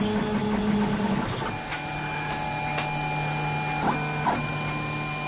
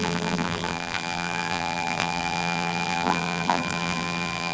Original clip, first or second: first